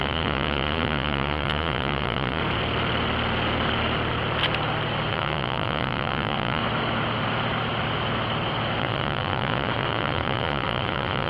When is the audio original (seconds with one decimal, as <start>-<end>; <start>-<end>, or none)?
2.4-5.1; 6.6-8.8